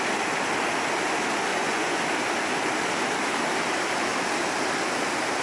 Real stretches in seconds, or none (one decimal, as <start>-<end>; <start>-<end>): 0.0-1.5; 2.0-5.4